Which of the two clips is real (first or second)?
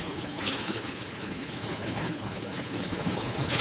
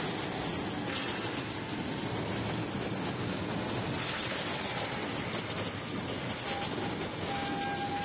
second